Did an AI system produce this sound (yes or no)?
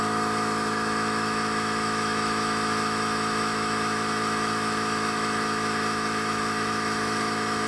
yes